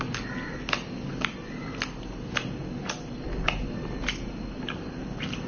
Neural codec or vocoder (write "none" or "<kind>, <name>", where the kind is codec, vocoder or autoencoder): none